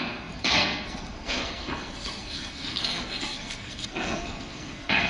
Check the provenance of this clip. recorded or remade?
remade